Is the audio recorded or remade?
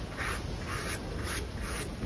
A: recorded